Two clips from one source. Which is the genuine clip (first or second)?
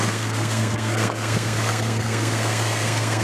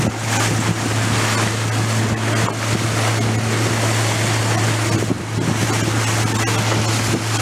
second